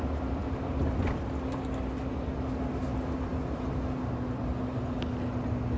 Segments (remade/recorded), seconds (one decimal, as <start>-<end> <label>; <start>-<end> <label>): 0.0-5.8 recorded